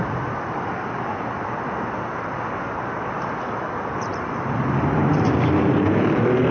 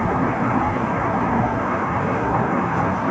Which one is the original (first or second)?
first